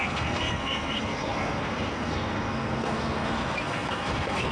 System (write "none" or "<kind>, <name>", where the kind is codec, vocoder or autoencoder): codec, SNAC